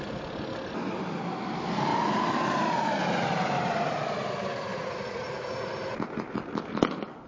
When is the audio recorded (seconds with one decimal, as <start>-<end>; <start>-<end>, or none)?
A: 0.0-4.7; 5.5-7.3